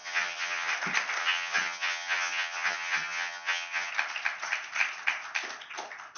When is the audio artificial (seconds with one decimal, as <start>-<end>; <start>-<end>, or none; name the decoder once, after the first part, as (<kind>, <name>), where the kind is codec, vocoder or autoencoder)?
0.0-0.7 (vocoder, HiFi-GAN); 1.2-3.9